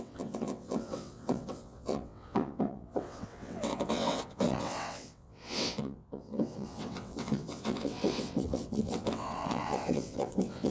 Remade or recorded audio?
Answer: remade